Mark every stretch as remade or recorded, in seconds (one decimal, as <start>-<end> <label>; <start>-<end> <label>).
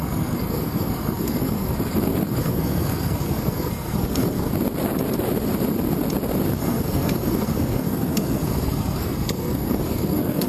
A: 0.0-1.7 remade; 1.7-2.4 recorded; 2.4-4.5 remade; 4.5-6.6 recorded; 6.6-10.5 remade